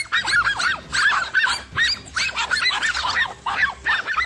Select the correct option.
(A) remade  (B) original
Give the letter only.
B